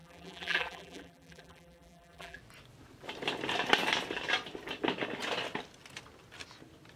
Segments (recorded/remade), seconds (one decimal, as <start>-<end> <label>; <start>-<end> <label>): 0.0-2.4 remade; 2.4-7.0 recorded